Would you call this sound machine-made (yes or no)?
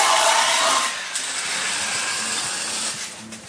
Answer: no